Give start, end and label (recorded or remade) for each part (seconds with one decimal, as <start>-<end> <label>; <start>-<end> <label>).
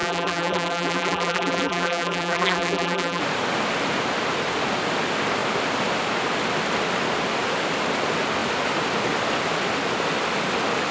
0.0-3.2 remade; 3.2-10.9 recorded